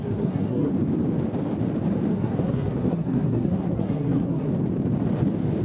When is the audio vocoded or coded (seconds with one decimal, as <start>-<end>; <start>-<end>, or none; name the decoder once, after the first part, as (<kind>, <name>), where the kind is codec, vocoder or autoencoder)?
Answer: 0.0-0.7 (codec, SNAC); 2.1-4.5